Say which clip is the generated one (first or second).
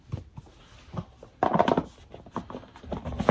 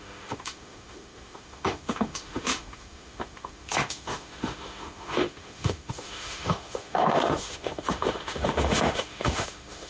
second